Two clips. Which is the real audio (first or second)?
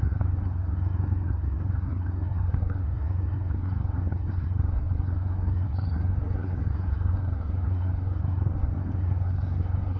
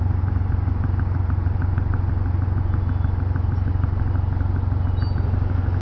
second